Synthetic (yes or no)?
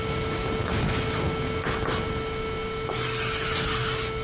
no